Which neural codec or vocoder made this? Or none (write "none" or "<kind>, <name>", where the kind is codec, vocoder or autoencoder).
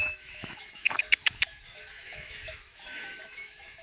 autoencoder, DAC-VAE